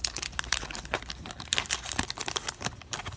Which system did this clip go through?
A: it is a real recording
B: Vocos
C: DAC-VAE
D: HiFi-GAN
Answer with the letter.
A